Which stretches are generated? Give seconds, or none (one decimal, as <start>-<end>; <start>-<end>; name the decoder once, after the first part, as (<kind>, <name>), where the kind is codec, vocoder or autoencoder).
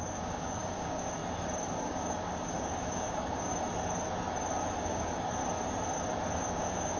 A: 0.0-1.2 (codec, DAC); 1.7-3.5; 4.8-5.4; 6.4-7.0